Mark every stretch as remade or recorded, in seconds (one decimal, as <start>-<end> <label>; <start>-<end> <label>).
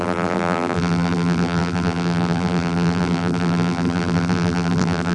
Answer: 0.0-5.1 remade